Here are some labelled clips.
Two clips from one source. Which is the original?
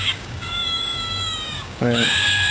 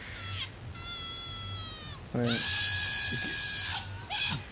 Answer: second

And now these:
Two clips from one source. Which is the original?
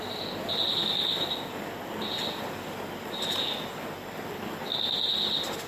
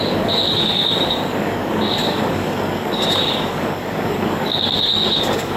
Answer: first